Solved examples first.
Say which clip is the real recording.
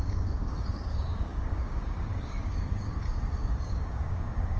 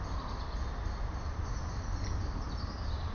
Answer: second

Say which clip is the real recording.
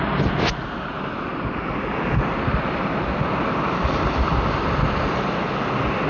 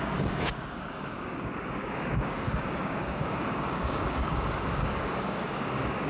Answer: first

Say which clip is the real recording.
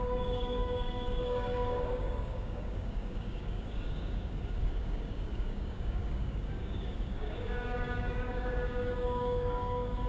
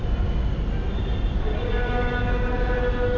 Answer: second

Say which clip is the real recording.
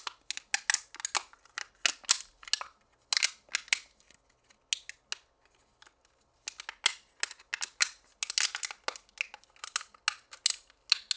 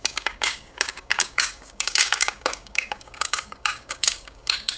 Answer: first